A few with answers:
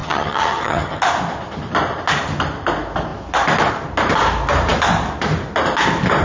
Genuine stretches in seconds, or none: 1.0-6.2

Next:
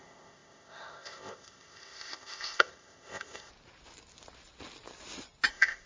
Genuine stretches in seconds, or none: 3.5-5.5

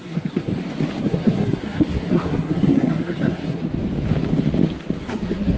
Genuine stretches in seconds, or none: 0.5-1.0; 3.6-5.0

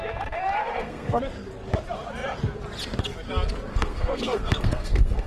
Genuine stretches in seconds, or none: 0.0-0.6; 1.2-3.7

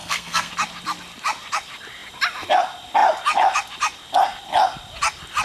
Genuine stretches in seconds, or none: 0.5-5.4

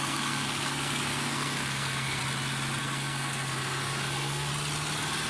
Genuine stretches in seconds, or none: 2.2-2.8; 4.5-5.3

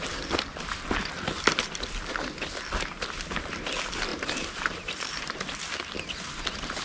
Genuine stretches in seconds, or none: 0.0-4.1; 5.4-6.8